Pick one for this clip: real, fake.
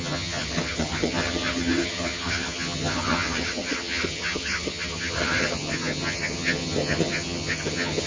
fake